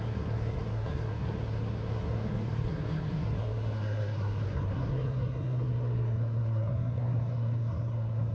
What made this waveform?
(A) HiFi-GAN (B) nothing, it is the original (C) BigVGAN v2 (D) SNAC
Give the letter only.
D